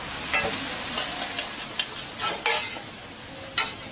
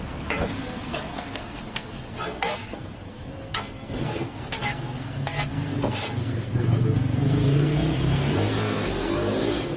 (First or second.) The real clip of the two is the first